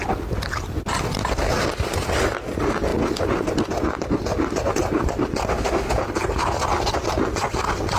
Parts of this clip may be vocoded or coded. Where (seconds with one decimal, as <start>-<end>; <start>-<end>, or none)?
5.5-6.0